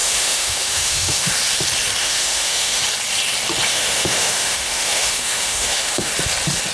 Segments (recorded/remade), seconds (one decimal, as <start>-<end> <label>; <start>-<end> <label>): 0.0-1.3 remade; 1.3-2.0 recorded; 2.0-2.8 remade; 2.8-3.7 recorded; 3.7-6.1 remade; 6.1-6.7 recorded